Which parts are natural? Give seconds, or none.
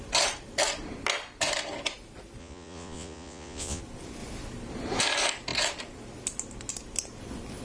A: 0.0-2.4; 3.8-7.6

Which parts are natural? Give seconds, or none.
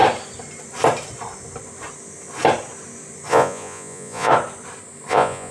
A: 0.0-3.3; 4.3-5.1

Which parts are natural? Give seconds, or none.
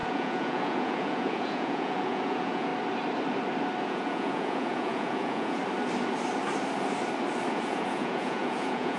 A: 2.7-3.8; 5.6-7.5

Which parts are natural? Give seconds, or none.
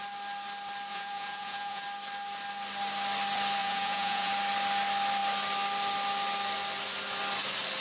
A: 0.0-0.9; 1.8-3.6; 4.3-7.8